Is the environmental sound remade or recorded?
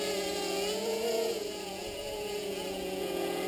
remade